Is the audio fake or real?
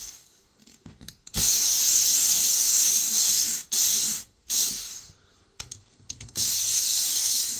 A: fake